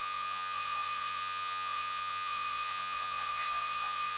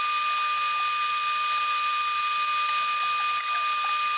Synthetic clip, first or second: first